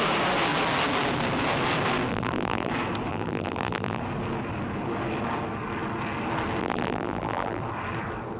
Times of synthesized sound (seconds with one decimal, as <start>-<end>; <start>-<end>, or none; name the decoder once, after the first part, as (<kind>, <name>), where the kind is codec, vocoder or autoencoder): 2.1-2.7 (vocoder, BigVGAN v2); 3.1-4.0; 6.6-7.6